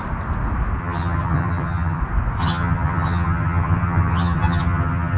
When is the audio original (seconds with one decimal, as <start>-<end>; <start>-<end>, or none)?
0.0-0.8; 2.0-2.4